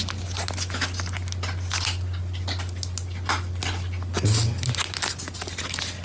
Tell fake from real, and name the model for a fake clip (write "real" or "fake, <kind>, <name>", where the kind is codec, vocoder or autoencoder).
real